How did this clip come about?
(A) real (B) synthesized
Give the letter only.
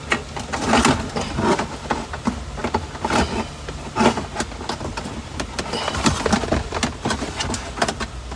A